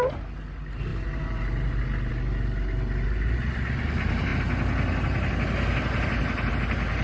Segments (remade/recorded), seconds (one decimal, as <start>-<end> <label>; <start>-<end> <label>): 0.0-7.0 recorded

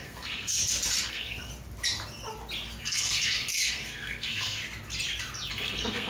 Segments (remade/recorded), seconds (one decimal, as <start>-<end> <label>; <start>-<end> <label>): 0.0-0.6 remade; 0.6-1.1 recorded; 1.1-1.5 remade; 1.5-2.8 recorded; 2.8-4.6 remade; 4.6-5.5 recorded; 5.5-6.1 remade

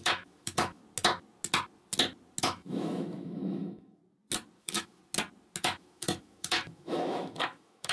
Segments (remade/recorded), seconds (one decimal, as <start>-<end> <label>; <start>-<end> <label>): 0.0-0.8 remade; 0.8-2.4 recorded; 2.4-4.0 remade; 4.0-4.6 recorded; 4.6-5.0 remade; 5.0-5.6 recorded; 5.6-7.9 remade

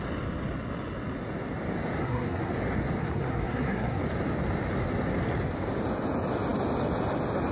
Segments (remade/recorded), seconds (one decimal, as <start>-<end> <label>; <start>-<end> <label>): 0.0-2.0 recorded; 2.0-2.5 remade; 2.5-3.0 recorded; 3.0-4.0 remade; 4.0-7.5 recorded